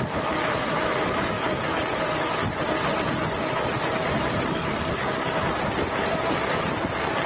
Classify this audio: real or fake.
real